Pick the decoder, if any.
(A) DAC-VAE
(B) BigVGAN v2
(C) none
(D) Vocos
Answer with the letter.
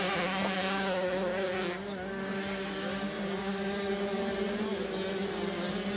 C